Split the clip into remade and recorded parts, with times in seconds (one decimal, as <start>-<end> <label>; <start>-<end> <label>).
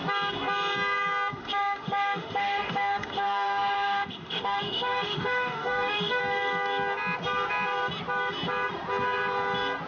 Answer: 0.0-1.3 recorded; 1.3-6.2 remade; 6.2-9.9 recorded